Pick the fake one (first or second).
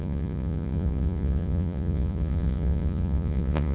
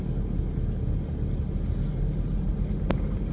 first